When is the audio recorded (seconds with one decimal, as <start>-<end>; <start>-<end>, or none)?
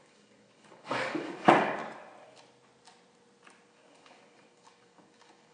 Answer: 1.8-3.7